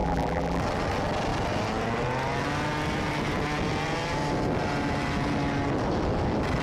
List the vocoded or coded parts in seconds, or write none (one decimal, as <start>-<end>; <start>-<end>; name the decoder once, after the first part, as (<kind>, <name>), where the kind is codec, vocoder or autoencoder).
0.0-0.6 (vocoder, BigVGAN v2)